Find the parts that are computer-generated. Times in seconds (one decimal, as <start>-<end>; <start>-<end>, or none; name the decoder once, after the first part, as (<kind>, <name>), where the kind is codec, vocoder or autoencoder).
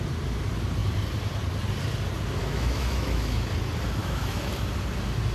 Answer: 2.4-3.5 (autoencoder, DAC-VAE); 4.0-4.5